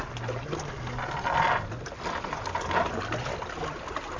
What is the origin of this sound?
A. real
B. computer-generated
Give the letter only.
A